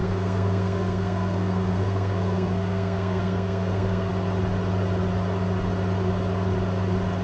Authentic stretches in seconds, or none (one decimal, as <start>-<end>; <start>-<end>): 4.1-7.2